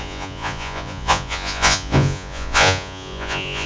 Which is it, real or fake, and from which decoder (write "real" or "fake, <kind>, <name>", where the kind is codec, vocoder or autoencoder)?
fake, vocoder, Vocos